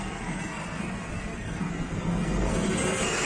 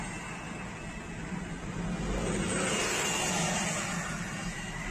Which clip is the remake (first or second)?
first